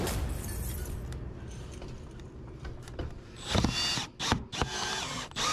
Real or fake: real